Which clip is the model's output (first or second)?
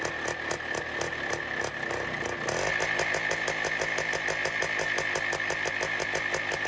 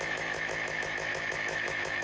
second